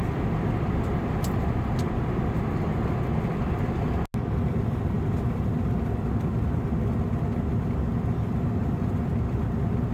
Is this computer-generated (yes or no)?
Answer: no